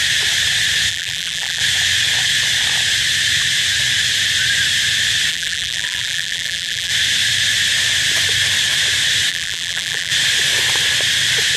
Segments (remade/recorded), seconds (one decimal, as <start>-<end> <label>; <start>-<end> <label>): 0.0-0.9 recorded; 0.9-1.6 remade; 1.6-5.3 recorded; 5.3-6.9 remade; 6.9-9.3 recorded; 9.3-10.1 remade; 10.1-11.6 recorded